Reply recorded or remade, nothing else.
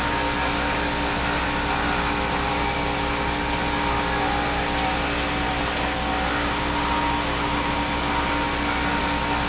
recorded